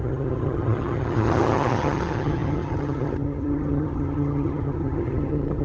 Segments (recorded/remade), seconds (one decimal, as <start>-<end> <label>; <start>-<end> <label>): 0.0-5.6 remade